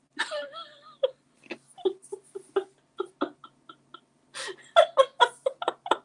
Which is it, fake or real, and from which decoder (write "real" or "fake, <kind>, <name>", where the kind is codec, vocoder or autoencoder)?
real